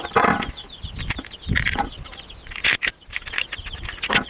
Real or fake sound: real